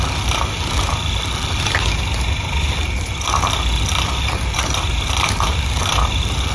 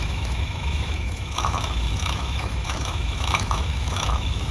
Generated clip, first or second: second